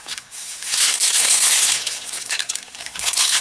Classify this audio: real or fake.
fake